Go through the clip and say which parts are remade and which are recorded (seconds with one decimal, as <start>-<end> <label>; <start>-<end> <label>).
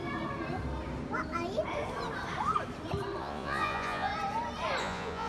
0.0-3.2 recorded; 3.2-4.1 remade; 4.1-4.8 recorded; 4.8-5.3 remade